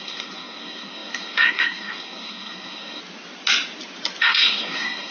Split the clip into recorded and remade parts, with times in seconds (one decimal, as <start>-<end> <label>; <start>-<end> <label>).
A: 0.0-3.0 remade; 3.0-4.2 recorded; 4.2-5.1 remade